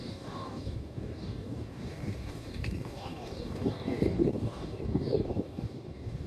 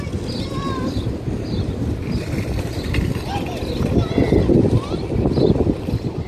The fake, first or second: first